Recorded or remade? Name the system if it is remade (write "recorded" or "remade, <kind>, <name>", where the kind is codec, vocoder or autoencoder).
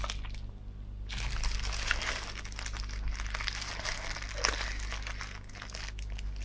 recorded